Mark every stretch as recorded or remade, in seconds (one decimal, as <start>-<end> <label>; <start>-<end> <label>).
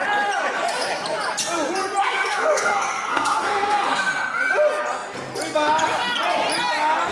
0.0-2.0 recorded; 2.0-4.1 remade; 4.1-7.1 recorded